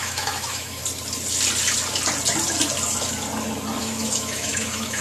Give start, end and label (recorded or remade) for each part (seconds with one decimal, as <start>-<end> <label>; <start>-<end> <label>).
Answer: 0.0-0.8 remade; 0.8-3.8 recorded; 3.8-5.0 remade